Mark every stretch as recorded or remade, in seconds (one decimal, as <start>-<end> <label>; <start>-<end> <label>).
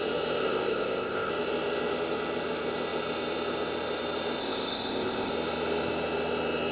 0.0-0.4 recorded; 0.4-1.3 remade; 1.3-4.4 recorded; 4.4-5.3 remade; 5.3-6.7 recorded